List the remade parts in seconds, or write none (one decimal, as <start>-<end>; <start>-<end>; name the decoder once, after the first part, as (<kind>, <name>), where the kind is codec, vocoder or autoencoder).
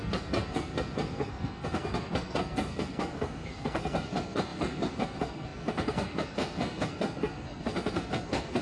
0.0-8.6 (codec, SNAC)